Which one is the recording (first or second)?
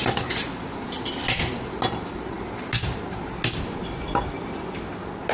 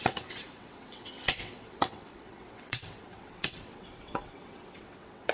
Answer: first